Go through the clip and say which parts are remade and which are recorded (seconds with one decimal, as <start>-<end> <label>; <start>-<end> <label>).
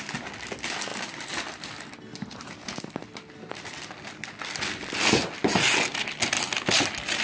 0.0-7.2 recorded